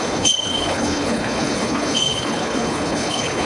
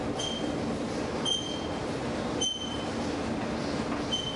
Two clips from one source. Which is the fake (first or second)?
first